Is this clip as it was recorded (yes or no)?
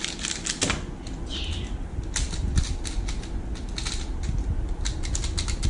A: yes